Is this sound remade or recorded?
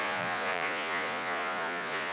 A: remade